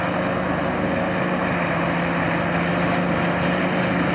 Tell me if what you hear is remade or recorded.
recorded